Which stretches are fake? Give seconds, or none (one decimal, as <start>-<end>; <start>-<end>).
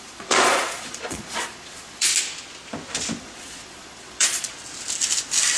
0.0-2.1; 3.2-4.5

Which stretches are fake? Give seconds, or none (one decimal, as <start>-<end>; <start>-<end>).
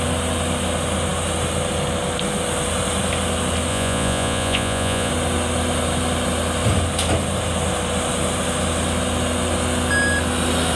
3.7-5.1